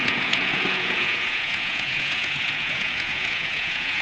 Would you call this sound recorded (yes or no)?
no